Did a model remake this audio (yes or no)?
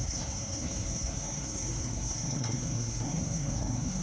yes